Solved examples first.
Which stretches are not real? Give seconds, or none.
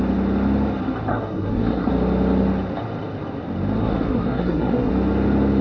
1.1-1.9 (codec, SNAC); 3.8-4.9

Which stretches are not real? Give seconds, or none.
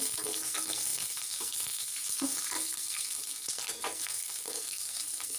0.0-5.4 (codec, SNAC)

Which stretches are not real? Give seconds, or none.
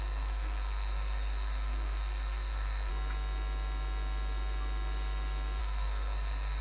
0.0-2.9 (codec, SNAC); 5.6-6.6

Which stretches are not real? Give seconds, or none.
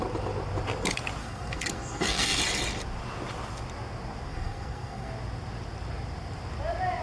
1.2-2.4 (codec, SNAC); 4.3-5.1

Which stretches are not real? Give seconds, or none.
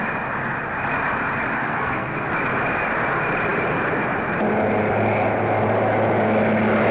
1.6-2.3 (codec, SNAC)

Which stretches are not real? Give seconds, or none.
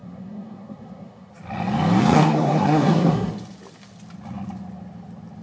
0.0-1.3 (codec, SNAC); 2.0-3.3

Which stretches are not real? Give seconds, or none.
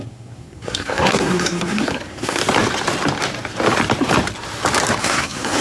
0.0-2.4 (codec, SNAC); 5.0-5.6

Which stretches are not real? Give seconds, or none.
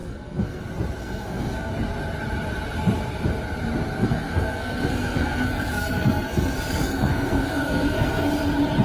0.0-0.6 (codec, SNAC); 1.0-1.7; 4.0-8.3